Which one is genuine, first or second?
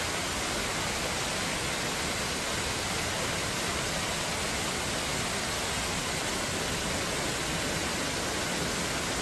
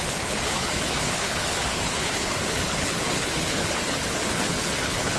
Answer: first